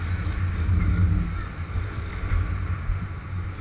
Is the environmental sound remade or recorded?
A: recorded